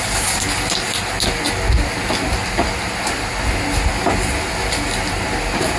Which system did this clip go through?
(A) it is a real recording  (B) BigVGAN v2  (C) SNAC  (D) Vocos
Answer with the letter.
A